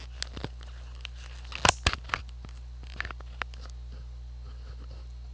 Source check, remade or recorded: recorded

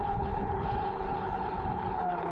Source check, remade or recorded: remade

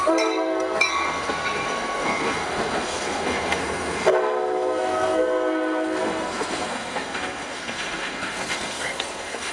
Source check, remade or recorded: remade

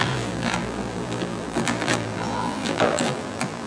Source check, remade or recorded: remade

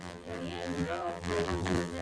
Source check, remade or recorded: remade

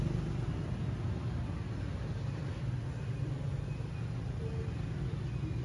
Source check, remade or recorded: recorded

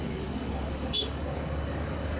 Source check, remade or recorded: remade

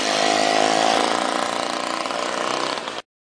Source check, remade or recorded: recorded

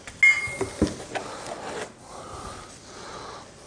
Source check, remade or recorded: recorded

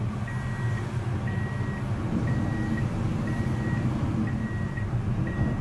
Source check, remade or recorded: recorded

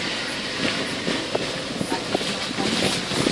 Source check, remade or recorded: recorded